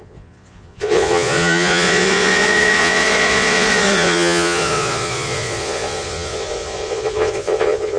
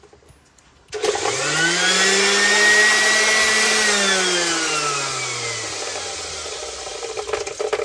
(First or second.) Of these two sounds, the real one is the second